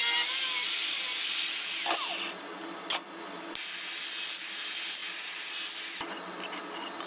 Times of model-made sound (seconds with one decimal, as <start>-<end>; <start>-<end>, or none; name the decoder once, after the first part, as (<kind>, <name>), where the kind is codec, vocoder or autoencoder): none